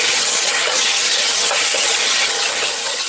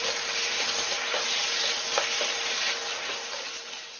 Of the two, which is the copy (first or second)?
first